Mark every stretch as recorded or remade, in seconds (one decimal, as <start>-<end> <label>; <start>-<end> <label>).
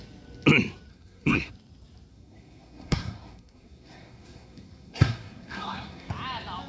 0.0-0.9 recorded; 0.9-1.5 remade; 1.5-2.1 recorded; 2.1-6.1 remade; 6.1-6.7 recorded